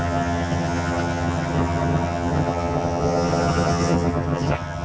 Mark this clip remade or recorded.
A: remade